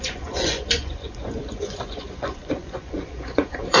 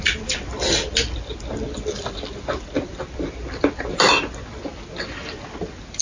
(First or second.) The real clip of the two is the second